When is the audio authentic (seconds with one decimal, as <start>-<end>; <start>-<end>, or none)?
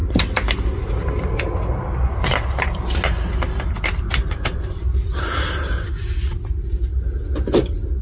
0.0-8.0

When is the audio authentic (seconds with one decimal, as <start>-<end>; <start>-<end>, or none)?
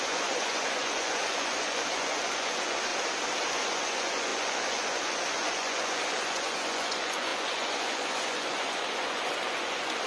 2.9-3.5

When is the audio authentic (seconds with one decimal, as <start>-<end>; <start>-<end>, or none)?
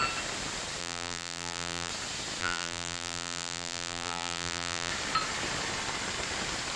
0.0-0.8; 1.9-2.4; 4.9-6.8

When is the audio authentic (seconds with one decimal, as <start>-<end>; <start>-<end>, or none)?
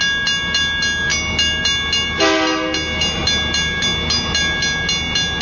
0.0-5.4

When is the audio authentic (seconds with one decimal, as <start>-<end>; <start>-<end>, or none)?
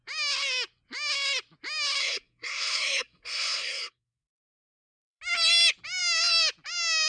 0.0-2.0; 5.2-7.1